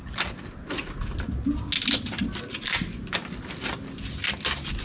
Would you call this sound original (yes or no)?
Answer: yes